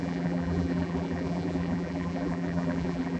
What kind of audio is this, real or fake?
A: fake